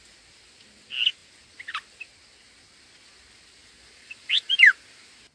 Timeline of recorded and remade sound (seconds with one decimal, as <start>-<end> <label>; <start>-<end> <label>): 0.0-3.6 recorded; 3.6-4.7 remade; 4.7-5.3 recorded